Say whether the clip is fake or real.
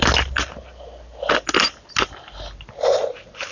real